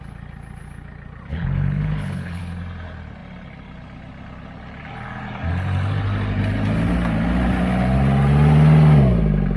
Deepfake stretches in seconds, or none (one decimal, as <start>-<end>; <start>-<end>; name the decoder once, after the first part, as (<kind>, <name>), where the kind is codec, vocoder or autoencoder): 1.3-2.4 (codec, HILCodec)